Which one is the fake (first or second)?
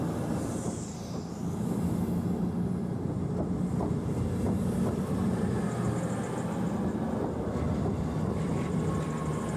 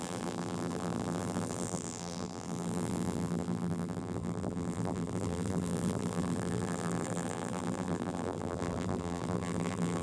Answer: second